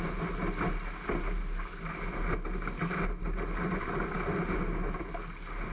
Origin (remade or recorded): recorded